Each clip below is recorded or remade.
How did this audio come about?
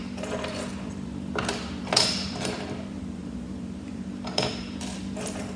remade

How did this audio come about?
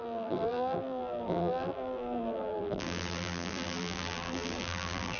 remade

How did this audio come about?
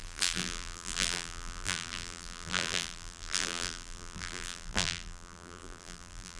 remade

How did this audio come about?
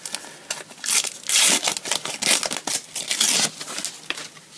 recorded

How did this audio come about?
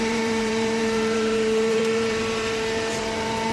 remade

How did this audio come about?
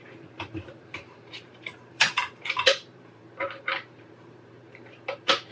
remade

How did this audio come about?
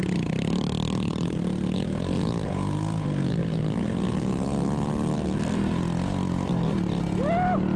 recorded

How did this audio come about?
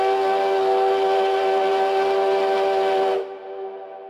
recorded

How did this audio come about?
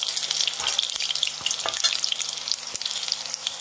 recorded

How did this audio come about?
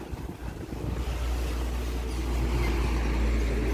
recorded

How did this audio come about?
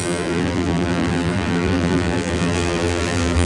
remade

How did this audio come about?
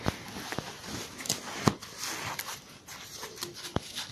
recorded